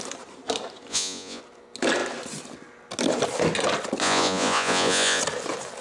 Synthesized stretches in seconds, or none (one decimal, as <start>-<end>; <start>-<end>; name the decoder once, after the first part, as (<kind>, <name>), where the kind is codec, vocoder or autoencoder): 0.9-1.4 (vocoder, Vocos); 4.0-5.2